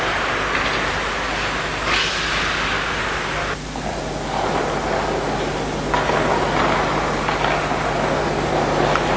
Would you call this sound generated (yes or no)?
no